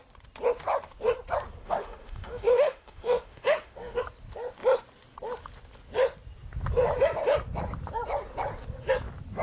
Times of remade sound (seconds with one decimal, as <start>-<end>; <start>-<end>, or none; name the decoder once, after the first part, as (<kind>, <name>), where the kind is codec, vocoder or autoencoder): 1.6-4.0 (autoencoder, DAC-VAE)